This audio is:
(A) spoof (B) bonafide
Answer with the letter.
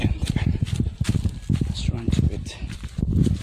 A